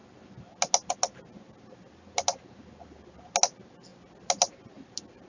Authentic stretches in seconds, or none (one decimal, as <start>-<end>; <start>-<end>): 0.0-5.3